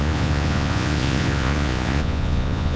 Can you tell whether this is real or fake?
fake